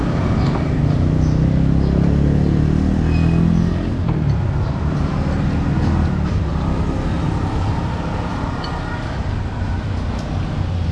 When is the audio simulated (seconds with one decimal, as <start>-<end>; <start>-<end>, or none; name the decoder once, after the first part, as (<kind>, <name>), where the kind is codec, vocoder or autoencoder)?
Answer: none